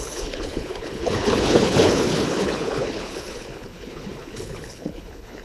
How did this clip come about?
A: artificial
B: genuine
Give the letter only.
A